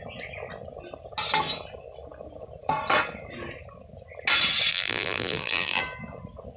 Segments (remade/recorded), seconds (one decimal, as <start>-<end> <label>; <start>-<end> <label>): 0.0-4.7 recorded; 4.7-5.8 remade; 5.8-6.6 recorded